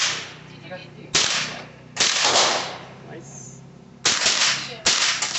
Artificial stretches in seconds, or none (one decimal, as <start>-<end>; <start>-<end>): 0.8-4.0